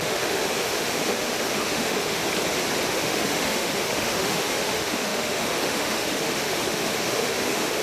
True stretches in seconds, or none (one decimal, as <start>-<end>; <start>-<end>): 2.2-2.9